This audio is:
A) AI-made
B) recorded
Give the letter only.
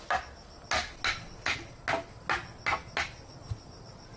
B